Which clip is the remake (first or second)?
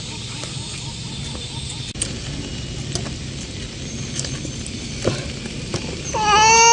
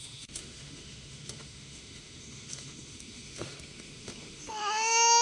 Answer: second